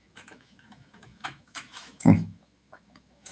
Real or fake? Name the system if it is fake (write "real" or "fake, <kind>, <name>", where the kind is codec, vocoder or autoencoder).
fake, autoencoder, DAC-VAE